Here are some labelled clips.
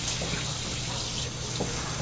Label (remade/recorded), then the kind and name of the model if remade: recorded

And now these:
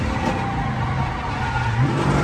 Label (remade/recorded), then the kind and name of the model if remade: recorded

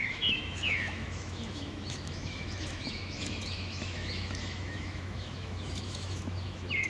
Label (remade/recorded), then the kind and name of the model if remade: remade, autoencoder, DAC-VAE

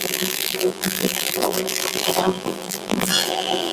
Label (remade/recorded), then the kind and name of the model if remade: remade, vocoder, BigVGAN v2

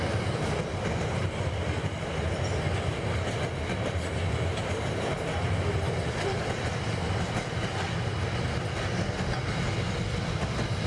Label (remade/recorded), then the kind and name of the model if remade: recorded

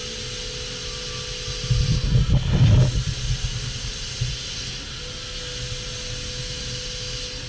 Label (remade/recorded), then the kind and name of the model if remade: recorded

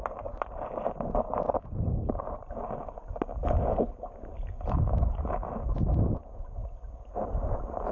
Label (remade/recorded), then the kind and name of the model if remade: recorded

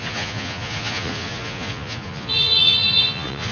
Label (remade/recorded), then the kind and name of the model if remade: remade, vocoder, Vocos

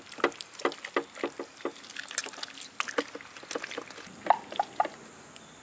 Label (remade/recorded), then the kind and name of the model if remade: recorded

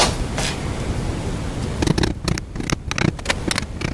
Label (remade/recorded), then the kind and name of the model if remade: recorded